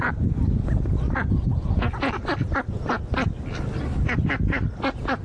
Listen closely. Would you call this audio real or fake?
real